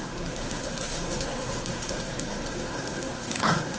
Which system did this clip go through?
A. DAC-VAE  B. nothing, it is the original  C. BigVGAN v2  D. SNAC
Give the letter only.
D